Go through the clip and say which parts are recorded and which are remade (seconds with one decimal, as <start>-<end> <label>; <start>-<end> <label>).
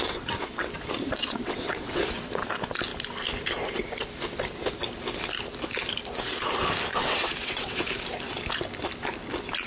0.0-0.7 remade; 0.7-1.2 recorded; 1.2-2.0 remade; 2.0-6.9 recorded; 6.9-7.9 remade; 7.9-9.7 recorded